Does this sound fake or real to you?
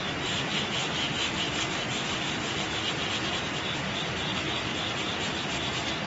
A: real